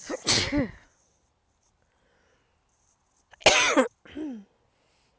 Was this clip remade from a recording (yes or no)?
no